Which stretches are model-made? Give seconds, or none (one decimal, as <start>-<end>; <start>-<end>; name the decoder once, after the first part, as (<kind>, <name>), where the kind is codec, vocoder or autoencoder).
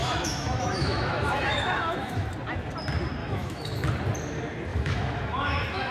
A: 0.0-2.3 (autoencoder, DAC-VAE); 3.2-3.9; 4.7-5.9